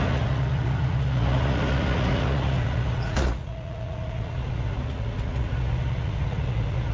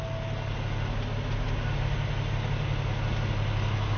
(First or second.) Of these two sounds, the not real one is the first